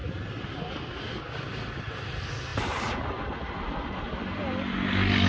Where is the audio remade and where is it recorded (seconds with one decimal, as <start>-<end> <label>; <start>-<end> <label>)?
0.0-5.3 recorded

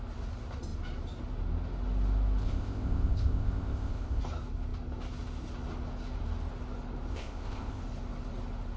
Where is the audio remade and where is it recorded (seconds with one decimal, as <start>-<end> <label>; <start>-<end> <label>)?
0.0-2.4 recorded; 2.4-4.2 remade; 4.2-7.1 recorded; 7.1-7.8 remade; 7.8-8.8 recorded

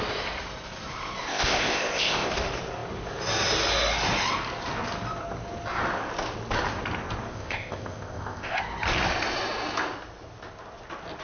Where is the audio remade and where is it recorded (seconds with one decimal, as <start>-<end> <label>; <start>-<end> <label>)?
0.0-1.2 recorded; 1.2-2.3 remade; 2.3-7.3 recorded; 7.3-8.6 remade; 8.6-11.2 recorded

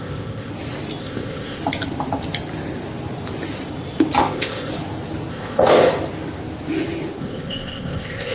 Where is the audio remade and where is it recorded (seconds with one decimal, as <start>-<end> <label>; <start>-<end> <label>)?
0.0-0.5 remade; 0.5-1.0 recorded; 1.0-1.6 remade; 1.6-4.2 recorded; 4.2-4.7 remade; 4.7-5.3 recorded; 5.3-5.9 remade; 5.9-7.2 recorded; 7.2-8.3 remade